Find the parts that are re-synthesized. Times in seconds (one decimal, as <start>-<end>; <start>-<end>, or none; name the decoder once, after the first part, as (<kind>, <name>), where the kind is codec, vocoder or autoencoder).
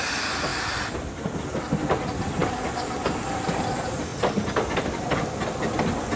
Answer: none